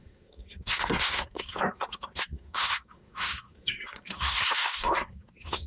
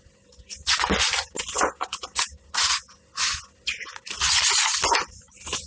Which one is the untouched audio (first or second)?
second